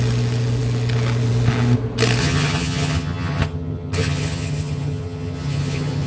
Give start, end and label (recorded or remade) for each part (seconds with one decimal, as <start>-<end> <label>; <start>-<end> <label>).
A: 0.0-2.2 recorded; 2.2-6.1 remade